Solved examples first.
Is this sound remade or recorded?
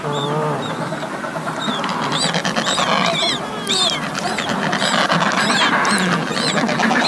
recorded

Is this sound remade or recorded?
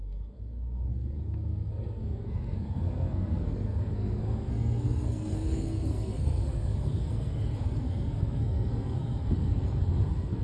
remade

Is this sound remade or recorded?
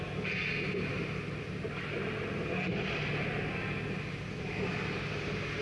recorded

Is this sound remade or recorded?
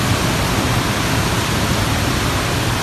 recorded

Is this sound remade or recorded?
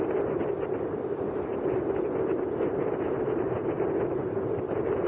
recorded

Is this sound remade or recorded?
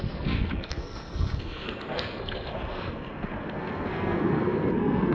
remade